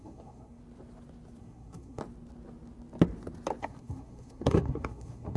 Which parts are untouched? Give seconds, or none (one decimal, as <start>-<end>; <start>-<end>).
0.6-1.4; 2.0-3.6